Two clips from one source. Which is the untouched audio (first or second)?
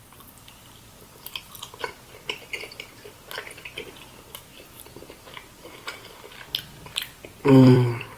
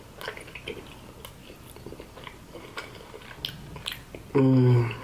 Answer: second